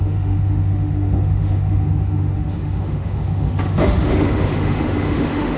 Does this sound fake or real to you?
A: fake